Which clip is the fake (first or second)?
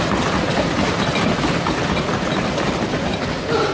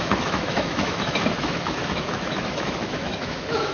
second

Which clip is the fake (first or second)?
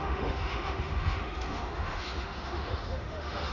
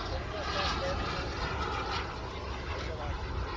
first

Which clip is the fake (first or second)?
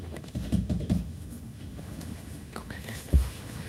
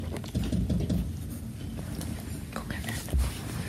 first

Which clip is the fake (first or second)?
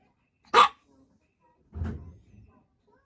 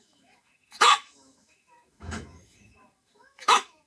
second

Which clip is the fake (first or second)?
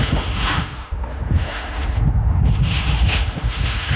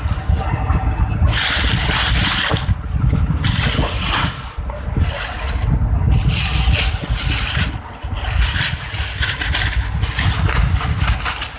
first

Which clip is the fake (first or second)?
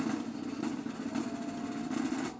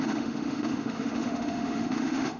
second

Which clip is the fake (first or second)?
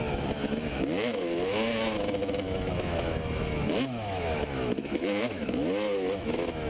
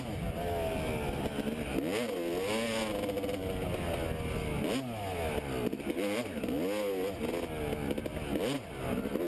first